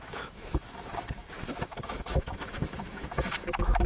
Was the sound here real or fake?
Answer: fake